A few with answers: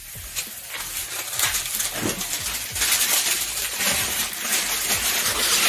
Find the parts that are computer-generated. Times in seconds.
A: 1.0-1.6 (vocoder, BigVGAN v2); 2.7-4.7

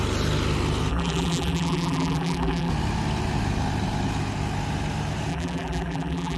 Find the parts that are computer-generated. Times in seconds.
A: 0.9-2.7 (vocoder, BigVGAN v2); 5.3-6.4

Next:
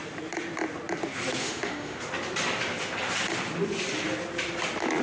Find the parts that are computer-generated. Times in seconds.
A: 1.4-2.0 (autoencoder, DAC-VAE)

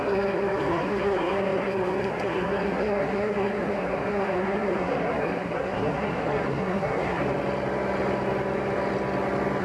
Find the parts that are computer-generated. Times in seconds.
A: 0.0-7.2 (codec, SNAC)

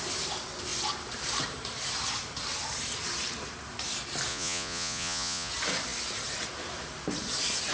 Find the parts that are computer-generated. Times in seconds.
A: 4.3-5.5 (vocoder, Vocos)

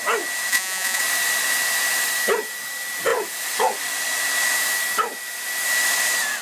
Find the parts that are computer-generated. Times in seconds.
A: 0.5-1.0 (vocoder, Vocos)

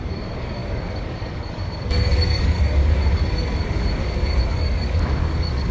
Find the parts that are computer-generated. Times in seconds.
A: 0.0-5.7 (codec, DAC)

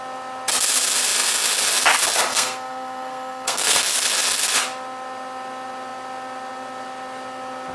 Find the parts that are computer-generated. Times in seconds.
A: 2.3-3.8 (codec, SNAC)